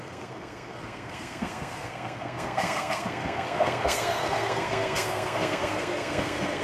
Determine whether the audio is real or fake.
fake